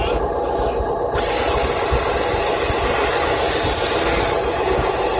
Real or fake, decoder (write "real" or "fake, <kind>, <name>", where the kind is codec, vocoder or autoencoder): real